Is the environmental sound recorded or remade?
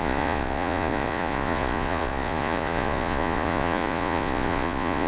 remade